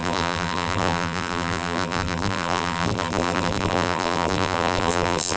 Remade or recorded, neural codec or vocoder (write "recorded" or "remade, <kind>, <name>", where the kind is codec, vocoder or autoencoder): remade, vocoder, BigVGAN v2